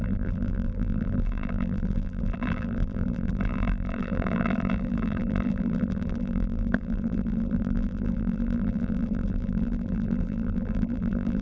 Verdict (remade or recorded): remade